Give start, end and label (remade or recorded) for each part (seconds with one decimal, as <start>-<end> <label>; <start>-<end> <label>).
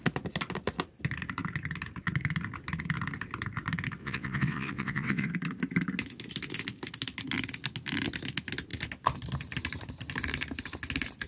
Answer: 0.0-4.0 recorded; 4.0-5.3 remade; 5.3-11.3 recorded